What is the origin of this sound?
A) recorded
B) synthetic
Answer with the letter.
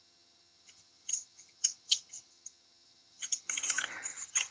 B